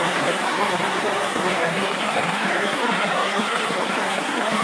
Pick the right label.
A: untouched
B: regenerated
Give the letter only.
B